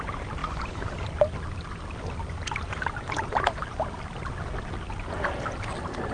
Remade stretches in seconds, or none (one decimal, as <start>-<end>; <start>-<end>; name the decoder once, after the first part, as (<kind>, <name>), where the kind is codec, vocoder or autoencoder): none